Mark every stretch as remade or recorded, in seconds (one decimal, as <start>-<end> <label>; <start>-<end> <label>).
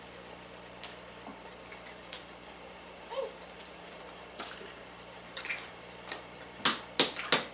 0.0-1.3 recorded; 1.3-5.8 remade; 5.8-7.5 recorded